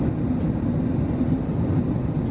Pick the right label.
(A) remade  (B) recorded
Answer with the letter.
B